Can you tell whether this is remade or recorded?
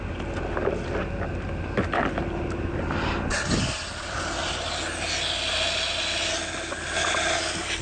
recorded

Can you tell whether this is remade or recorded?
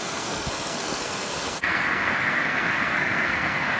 remade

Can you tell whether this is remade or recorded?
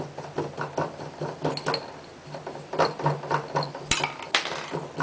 recorded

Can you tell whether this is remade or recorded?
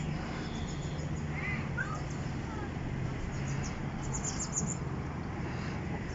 recorded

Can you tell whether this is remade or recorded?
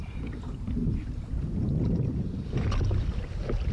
remade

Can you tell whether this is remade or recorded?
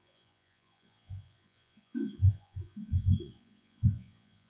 remade